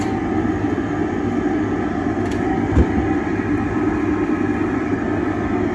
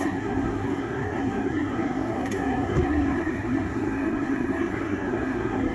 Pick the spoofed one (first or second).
second